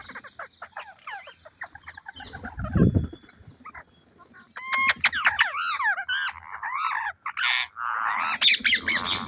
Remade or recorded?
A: recorded